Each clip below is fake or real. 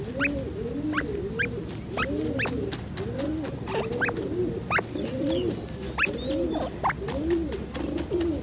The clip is real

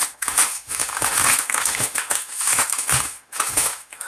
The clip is fake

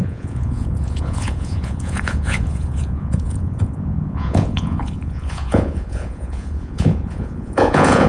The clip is fake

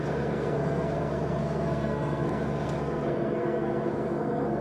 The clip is fake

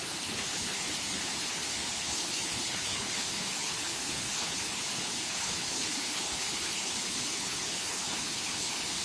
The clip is fake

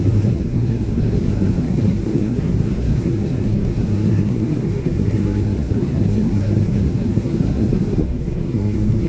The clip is fake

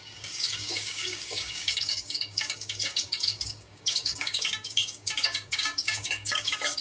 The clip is fake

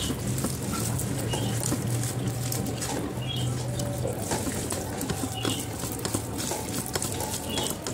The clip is real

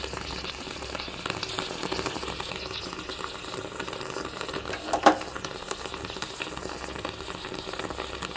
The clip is real